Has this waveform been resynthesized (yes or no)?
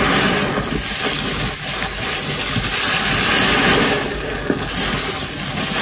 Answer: no